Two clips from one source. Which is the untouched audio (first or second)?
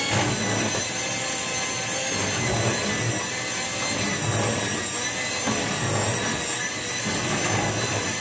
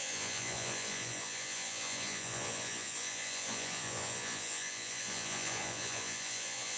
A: first